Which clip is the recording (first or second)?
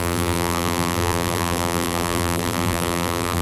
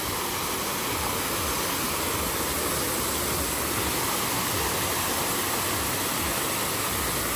second